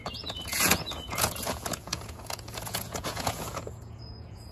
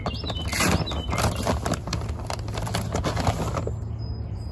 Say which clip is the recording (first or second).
second